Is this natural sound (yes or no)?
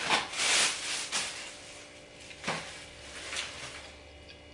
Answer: yes